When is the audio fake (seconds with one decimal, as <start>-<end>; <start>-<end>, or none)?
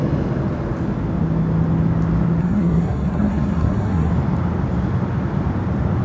2.4-4.1